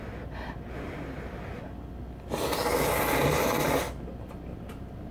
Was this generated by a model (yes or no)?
no